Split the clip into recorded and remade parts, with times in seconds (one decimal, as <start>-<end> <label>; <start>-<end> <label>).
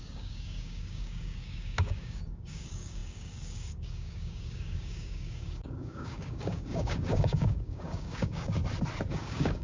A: 0.0-8.6 remade; 8.6-9.1 recorded; 9.1-9.6 remade